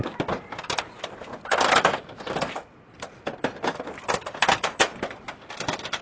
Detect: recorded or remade recorded